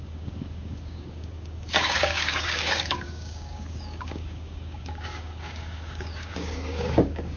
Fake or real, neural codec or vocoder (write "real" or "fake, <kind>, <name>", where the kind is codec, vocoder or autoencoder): fake, codec, DAC